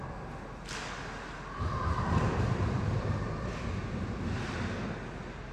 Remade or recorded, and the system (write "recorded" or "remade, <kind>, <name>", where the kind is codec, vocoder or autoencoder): recorded